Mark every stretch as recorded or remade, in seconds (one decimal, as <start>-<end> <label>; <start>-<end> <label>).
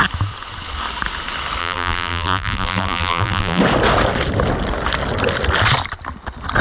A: 0.0-1.6 recorded; 1.6-3.6 remade; 3.6-6.6 recorded